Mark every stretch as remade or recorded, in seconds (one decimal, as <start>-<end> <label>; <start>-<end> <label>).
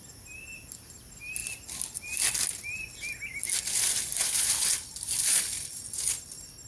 0.0-6.7 recorded